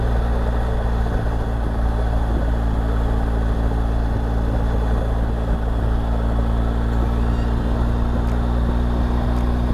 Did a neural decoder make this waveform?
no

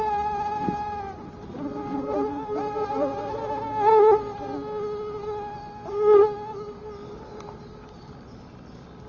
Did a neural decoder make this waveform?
no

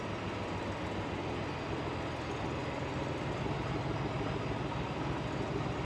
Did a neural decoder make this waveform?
no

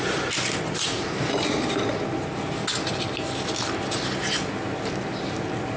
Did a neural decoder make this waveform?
no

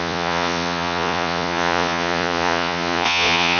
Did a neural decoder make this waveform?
yes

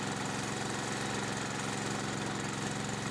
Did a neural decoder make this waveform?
no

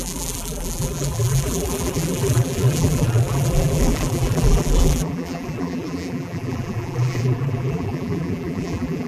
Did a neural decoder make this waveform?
yes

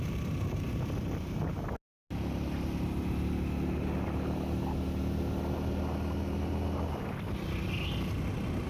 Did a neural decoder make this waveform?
no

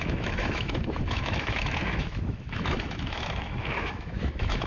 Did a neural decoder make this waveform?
yes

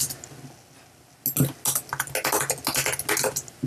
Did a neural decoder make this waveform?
no